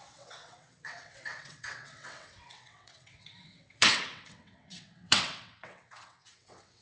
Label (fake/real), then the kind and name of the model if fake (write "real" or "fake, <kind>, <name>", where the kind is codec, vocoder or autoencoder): fake, vocoder, WaveNeXt